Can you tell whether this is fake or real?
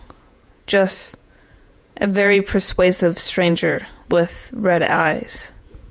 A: fake